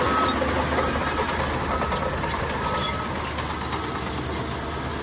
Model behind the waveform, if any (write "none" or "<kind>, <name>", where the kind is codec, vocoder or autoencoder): none